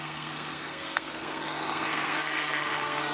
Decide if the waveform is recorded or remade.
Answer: remade